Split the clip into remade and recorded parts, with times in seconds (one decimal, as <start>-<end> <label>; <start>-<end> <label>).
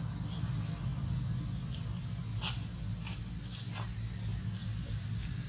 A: 0.0-5.5 recorded